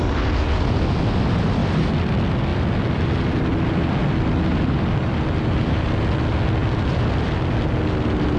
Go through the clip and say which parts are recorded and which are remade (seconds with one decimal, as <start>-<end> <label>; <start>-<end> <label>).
0.0-1.6 recorded; 1.6-2.1 remade; 2.1-2.5 recorded; 2.5-3.4 remade; 3.4-4.0 recorded; 4.0-5.9 remade; 5.9-8.4 recorded